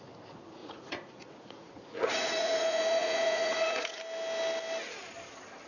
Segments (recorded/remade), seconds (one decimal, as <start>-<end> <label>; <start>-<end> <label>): 0.0-0.6 recorded; 0.6-4.0 remade; 4.0-5.7 recorded